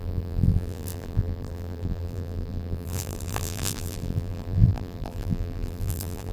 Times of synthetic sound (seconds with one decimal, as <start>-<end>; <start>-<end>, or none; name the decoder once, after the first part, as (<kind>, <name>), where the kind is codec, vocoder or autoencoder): 0.0-6.3 (vocoder, BigVGAN v2)